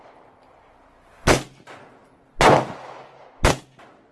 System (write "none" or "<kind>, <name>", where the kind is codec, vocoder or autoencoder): none